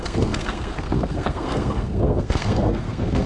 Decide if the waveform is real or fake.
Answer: fake